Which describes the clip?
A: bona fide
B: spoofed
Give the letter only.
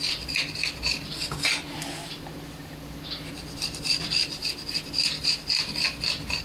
B